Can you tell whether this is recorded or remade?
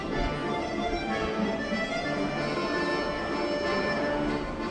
remade